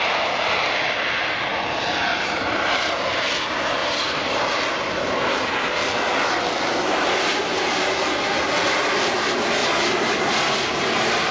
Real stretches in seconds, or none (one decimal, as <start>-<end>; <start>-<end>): 0.0-2.1; 2.9-3.8; 4.6-9.6; 10.3-11.3